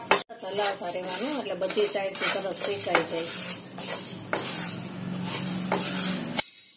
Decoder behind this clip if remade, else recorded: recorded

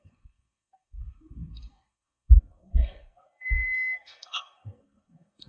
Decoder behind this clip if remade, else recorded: remade, codec, SNAC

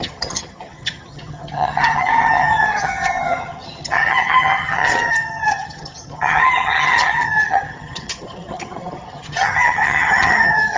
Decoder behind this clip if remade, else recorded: remade, vocoder, HiFi-GAN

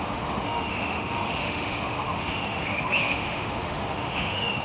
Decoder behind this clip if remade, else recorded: remade, autoencoder, DAC-VAE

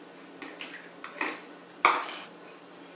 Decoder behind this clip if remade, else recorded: recorded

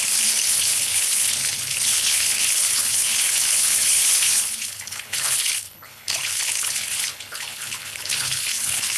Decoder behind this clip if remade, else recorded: remade, codec, HILCodec